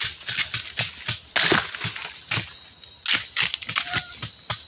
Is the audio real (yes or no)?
yes